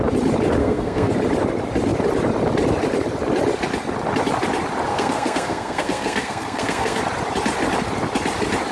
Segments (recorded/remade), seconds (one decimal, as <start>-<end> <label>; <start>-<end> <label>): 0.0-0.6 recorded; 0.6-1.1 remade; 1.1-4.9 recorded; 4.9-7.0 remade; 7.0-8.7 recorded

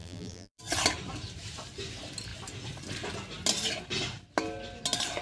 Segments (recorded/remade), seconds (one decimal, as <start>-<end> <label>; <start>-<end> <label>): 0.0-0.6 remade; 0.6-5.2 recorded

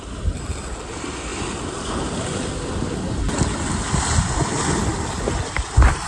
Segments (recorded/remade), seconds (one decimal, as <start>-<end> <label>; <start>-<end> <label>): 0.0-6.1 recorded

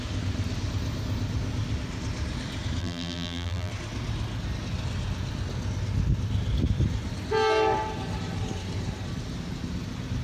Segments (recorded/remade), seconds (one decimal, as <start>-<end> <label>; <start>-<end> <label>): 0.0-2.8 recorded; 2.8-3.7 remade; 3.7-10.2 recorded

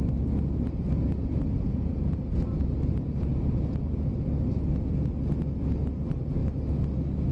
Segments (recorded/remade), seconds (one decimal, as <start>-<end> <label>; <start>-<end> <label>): 0.0-1.3 recorded; 1.3-2.2 remade; 2.2-3.3 recorded; 3.3-4.1 remade; 4.1-7.3 recorded

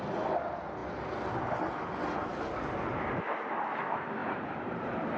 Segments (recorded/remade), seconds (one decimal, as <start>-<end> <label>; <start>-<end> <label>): 0.0-4.2 recorded; 4.2-5.2 remade

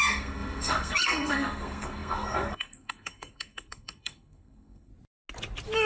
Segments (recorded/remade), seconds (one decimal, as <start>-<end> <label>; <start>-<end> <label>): 0.0-4.9 remade; 4.9-5.9 recorded